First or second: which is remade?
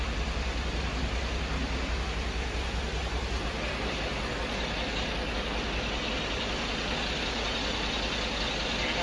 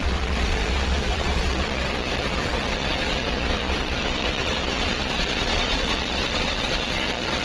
second